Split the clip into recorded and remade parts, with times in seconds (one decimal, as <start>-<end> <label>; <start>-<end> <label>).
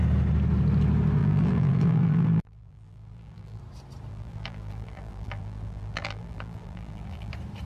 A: 0.0-1.2 recorded; 1.2-3.6 remade; 3.6-4.1 recorded; 4.1-7.3 remade; 7.3-7.7 recorded